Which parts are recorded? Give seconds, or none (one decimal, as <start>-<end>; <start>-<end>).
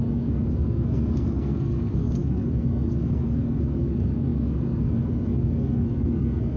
none